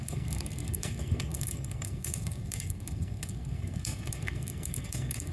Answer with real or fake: fake